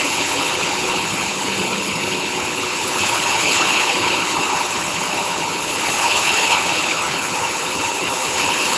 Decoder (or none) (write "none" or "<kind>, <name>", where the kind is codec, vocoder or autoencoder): codec, HILCodec